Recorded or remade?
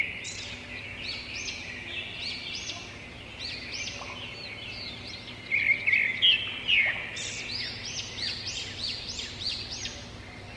recorded